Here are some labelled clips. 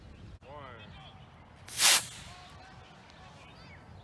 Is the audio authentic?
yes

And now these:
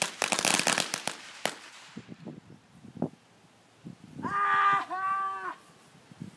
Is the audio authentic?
yes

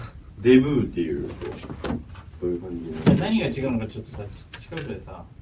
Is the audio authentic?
yes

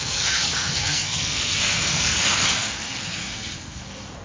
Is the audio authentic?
no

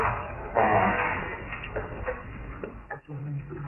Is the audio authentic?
no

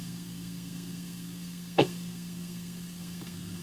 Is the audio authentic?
no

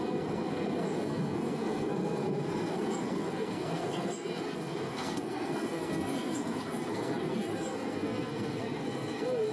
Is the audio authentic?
no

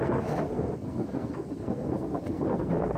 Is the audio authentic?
no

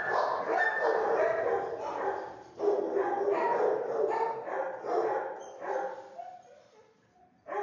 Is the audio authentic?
yes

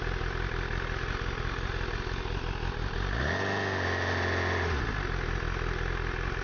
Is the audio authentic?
yes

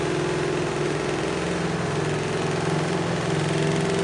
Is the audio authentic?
yes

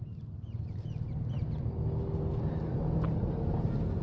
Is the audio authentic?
yes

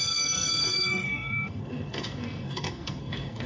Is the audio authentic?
no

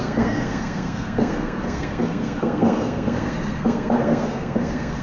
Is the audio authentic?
no